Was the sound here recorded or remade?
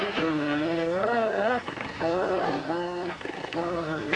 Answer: remade